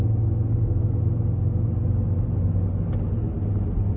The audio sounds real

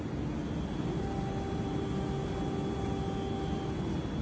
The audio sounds real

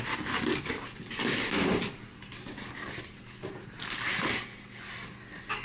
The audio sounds real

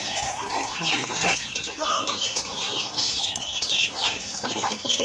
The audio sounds fake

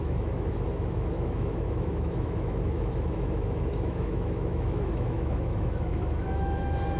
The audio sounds fake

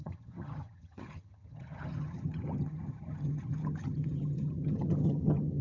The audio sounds fake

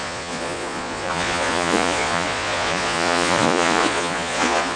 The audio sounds fake